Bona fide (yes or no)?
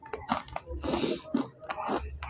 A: yes